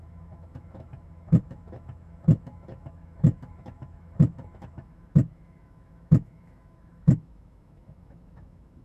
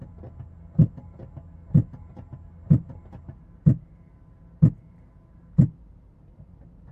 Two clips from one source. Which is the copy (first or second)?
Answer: first